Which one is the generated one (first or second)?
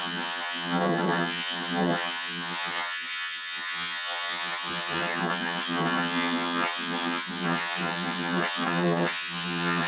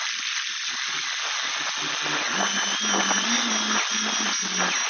first